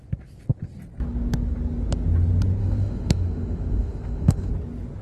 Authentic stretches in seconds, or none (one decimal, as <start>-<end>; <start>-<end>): 0.0-2.6; 4.5-5.0